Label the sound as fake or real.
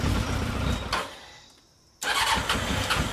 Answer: real